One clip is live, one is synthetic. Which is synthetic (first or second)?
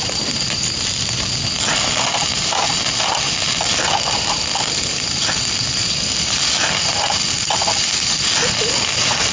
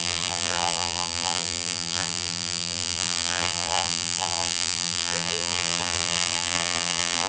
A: second